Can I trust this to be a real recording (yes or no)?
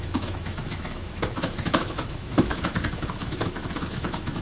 no